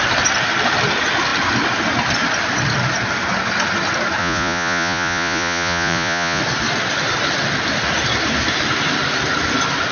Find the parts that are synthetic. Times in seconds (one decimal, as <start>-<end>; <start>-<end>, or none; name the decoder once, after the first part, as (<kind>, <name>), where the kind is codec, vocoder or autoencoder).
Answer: 4.2-6.4 (vocoder, Vocos)

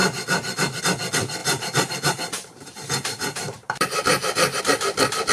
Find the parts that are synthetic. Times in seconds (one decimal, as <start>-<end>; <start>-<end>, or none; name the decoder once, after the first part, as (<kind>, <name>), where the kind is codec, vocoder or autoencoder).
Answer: 0.0-0.8 (vocoder, BigVGAN v2); 1.4-4.6

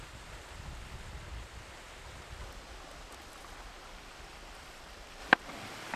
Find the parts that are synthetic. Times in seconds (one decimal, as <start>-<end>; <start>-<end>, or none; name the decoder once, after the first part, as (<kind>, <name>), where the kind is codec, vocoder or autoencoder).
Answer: none

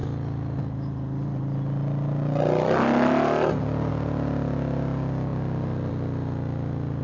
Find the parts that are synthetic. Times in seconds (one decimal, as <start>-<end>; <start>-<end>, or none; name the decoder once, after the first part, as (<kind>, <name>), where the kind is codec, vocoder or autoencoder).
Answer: none

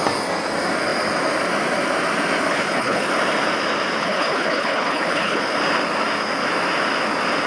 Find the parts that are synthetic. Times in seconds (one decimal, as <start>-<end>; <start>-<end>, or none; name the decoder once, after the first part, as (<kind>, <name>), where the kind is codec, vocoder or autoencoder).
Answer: 2.5-3.1 (codec, HILCodec); 4.0-5.4